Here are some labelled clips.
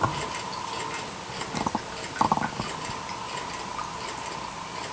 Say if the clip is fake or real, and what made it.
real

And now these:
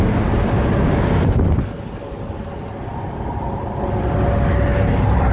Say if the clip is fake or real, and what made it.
real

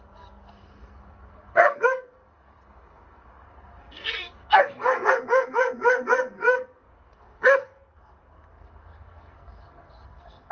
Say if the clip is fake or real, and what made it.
fake, codec, SNAC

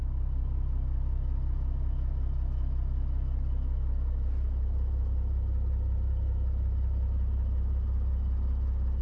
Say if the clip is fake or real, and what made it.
real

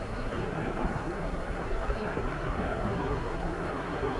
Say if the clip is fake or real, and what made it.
fake, codec, SNAC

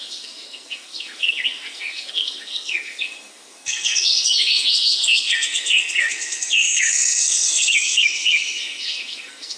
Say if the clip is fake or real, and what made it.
fake, codec, SNAC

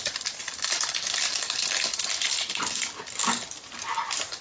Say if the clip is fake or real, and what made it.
real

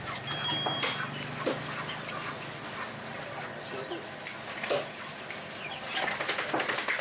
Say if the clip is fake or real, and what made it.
real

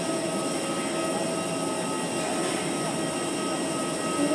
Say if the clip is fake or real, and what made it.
real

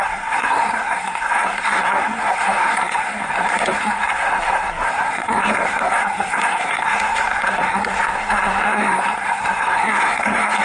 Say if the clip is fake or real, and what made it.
fake, codec, SNAC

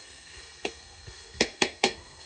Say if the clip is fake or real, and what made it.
fake, codec, SNAC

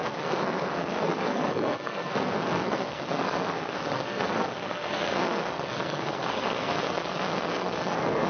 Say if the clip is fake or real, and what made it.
fake, codec, SNAC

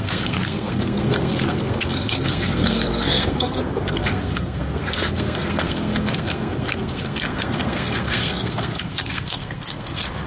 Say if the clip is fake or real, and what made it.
fake, codec, SNAC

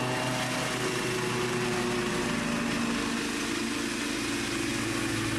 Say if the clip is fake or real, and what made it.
real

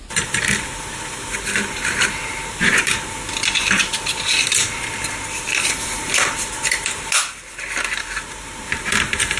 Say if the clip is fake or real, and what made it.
real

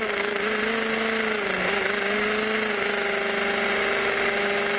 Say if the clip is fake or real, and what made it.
real